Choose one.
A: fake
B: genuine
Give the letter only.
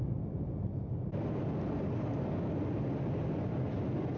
B